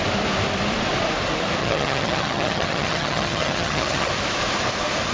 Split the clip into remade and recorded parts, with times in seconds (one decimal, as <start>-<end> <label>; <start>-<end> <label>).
0.0-1.6 recorded; 1.6-4.1 remade; 4.1-5.1 recorded